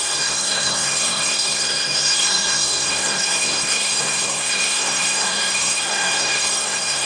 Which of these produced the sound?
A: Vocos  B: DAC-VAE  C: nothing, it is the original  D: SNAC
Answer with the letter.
D